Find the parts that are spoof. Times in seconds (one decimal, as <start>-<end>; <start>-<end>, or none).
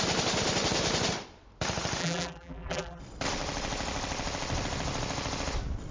2.0-3.0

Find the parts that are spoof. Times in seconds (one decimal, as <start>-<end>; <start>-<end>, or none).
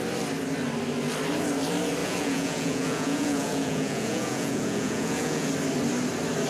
2.0-5.5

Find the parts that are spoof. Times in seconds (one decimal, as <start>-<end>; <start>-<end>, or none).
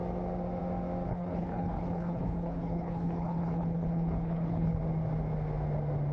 1.1-4.8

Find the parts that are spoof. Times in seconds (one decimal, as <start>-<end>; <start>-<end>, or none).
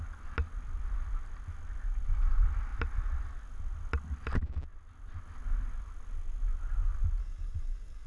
7.2-8.1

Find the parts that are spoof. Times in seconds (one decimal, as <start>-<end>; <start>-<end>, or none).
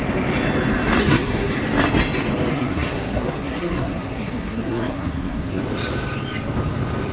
1.0-1.5; 2.5-5.6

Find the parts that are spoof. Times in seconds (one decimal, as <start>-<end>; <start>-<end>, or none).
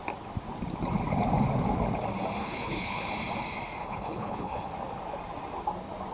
2.4-3.1; 3.8-4.7